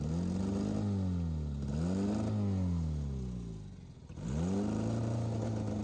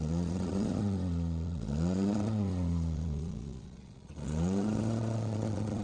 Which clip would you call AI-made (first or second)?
second